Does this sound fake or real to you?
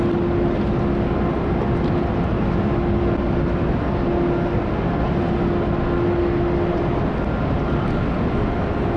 real